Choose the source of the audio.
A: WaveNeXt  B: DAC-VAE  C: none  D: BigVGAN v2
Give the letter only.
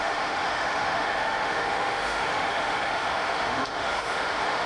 B